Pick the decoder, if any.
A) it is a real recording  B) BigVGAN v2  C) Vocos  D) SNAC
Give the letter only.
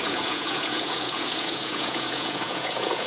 C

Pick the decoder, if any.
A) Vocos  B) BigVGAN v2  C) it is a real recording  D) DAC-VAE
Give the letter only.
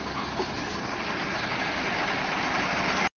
C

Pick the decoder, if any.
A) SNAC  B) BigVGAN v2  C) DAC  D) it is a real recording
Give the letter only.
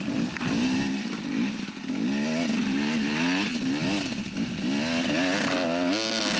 D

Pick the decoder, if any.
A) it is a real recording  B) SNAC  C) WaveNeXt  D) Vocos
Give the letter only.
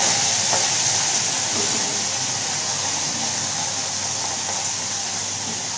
A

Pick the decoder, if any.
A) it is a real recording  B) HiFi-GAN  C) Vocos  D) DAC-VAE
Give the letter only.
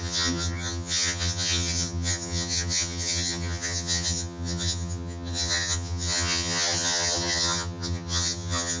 B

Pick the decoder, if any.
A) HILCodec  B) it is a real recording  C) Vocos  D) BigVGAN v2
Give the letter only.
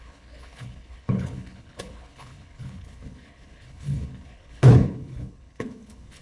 A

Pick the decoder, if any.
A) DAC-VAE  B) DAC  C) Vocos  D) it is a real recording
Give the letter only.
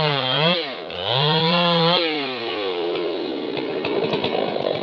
C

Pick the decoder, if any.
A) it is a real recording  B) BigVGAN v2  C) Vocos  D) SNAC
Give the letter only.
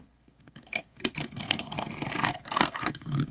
D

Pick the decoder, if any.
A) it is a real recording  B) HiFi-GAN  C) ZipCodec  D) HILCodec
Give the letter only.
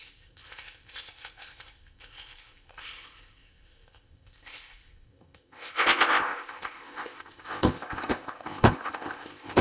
C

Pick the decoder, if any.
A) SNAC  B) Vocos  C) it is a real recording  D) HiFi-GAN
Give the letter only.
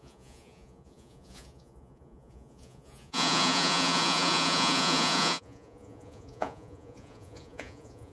B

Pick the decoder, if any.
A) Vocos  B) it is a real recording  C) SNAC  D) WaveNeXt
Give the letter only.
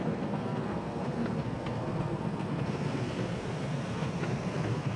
C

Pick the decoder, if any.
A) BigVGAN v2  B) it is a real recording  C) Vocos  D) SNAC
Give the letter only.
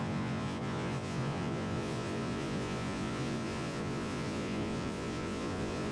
C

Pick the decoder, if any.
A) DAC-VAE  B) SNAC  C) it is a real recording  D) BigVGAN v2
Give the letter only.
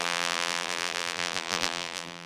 D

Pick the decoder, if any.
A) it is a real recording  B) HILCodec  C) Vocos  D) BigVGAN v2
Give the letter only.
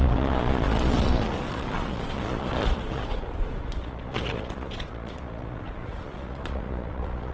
C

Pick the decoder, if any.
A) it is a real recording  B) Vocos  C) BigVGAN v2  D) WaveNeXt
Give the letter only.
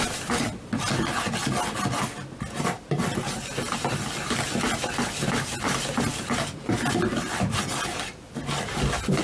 A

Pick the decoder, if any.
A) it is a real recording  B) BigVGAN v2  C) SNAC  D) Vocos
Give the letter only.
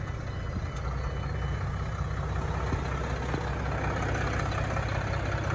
A